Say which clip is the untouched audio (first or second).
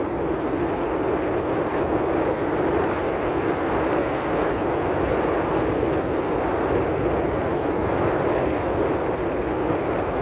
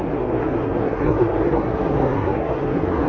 first